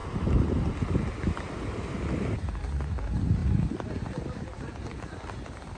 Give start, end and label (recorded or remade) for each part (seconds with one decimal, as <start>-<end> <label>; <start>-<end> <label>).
0.0-3.4 recorded; 3.4-5.8 remade

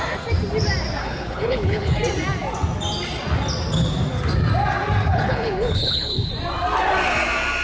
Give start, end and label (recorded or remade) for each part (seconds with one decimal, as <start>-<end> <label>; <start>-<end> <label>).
0.0-1.0 recorded; 1.0-1.9 remade; 1.9-5.1 recorded; 5.1-6.3 remade; 6.3-7.6 recorded

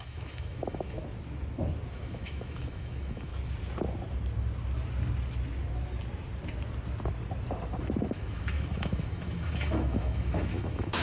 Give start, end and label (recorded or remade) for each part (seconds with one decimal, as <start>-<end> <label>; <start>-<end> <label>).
0.0-1.0 remade; 1.0-1.9 recorded; 1.9-3.3 remade; 3.3-8.1 recorded; 8.1-11.0 remade

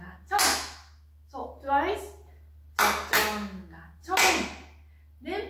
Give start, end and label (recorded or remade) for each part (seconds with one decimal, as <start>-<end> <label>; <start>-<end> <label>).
0.0-0.5 recorded; 0.5-1.5 remade; 1.5-3.2 recorded; 3.2-4.0 remade; 4.0-5.5 recorded

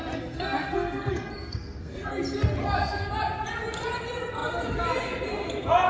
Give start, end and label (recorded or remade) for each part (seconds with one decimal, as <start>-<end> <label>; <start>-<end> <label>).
0.0-2.1 remade; 2.1-2.6 recorded; 2.6-3.1 remade; 3.1-5.9 recorded

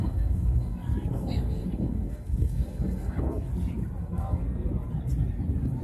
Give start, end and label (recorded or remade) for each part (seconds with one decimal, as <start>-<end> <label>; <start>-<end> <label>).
0.0-3.5 remade; 3.5-4.0 recorded; 4.0-4.7 remade; 4.7-5.8 recorded